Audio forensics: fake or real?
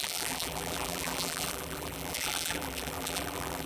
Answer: fake